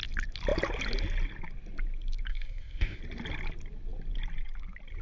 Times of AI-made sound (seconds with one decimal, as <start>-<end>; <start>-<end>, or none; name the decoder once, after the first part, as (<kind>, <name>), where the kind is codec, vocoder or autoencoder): 2.3-3.0 (codec, ZipCodec)